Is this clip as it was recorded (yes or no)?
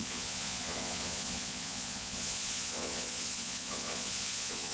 no